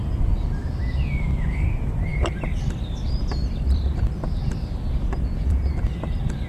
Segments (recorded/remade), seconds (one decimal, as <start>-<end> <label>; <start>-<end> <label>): 0.0-6.5 remade